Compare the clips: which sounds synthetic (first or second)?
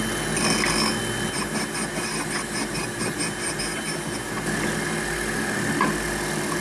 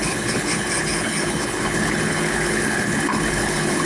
second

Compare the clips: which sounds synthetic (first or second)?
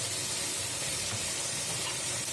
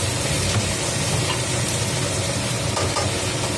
first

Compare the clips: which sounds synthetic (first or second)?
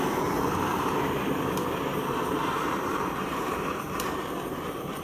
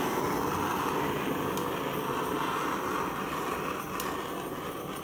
first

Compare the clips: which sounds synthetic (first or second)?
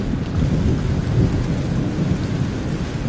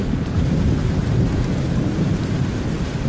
second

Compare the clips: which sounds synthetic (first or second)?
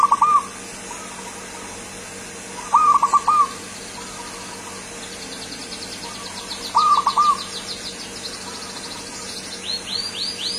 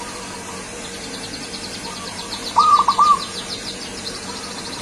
second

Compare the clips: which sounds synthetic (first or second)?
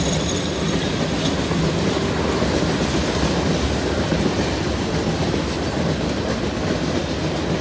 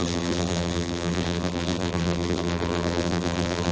second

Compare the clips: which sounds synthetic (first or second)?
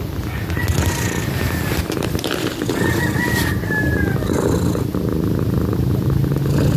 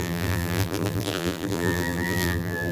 second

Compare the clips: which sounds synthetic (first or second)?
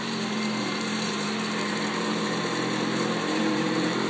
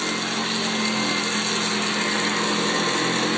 first